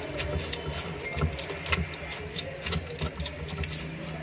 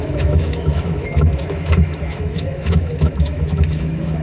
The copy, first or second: second